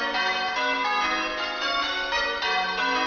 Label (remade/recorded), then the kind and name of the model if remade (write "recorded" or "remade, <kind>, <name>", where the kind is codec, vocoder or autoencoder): recorded